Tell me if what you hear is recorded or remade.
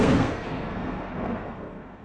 remade